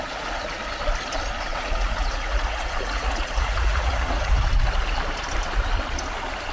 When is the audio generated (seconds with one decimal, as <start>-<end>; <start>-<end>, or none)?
1.5-4.3